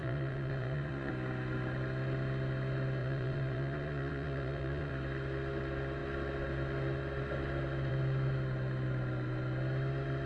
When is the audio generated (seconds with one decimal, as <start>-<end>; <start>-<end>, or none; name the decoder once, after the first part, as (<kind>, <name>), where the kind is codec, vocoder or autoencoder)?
0.0-1.1 (vocoder, Vocos); 3.0-4.9